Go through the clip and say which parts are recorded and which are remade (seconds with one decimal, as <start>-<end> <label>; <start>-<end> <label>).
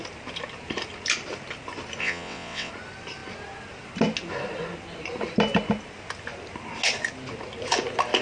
0.0-2.0 recorded; 2.0-2.7 remade; 2.7-8.2 recorded